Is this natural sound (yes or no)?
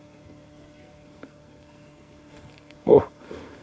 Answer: no